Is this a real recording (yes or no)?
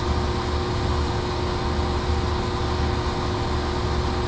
yes